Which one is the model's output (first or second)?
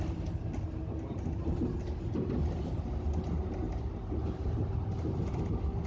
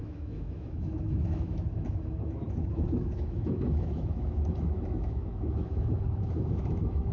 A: second